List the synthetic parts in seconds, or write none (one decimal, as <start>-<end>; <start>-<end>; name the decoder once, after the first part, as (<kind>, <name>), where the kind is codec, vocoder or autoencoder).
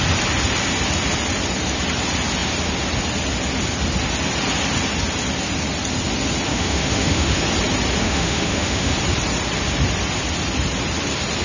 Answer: 6.5-7.4 (autoencoder, DAC-VAE); 8.0-8.9